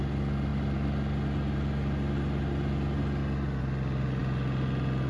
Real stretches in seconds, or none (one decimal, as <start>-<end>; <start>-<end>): 0.0-5.1